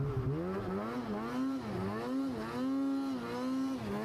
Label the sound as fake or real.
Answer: real